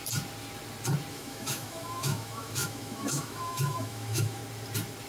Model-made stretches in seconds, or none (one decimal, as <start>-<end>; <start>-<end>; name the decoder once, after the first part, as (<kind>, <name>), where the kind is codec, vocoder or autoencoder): 1.1-4.4 (autoencoder, DAC-VAE)